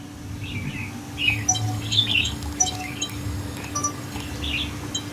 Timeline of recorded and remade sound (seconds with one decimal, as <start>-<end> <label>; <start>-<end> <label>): 0.0-1.2 recorded; 1.2-4.3 remade; 4.3-5.1 recorded